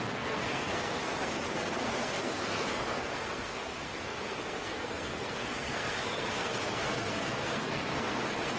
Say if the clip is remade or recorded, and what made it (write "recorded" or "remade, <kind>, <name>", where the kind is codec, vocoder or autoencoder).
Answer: remade, codec, SNAC